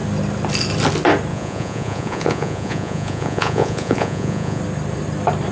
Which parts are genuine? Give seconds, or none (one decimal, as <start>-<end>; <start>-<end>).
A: 0.0-1.3; 4.6-5.5